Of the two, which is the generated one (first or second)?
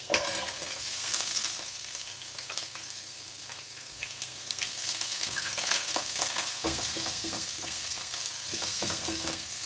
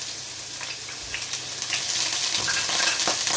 first